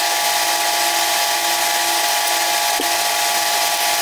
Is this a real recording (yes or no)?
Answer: yes